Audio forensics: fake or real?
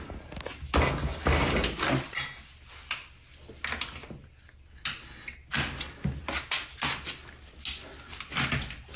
real